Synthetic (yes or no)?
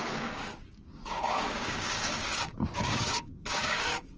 yes